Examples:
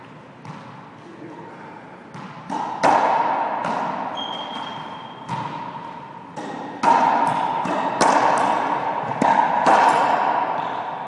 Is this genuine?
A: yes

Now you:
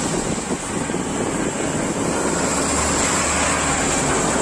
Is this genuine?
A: yes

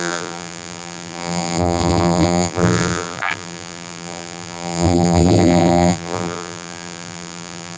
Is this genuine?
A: no